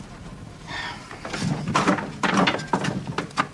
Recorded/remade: recorded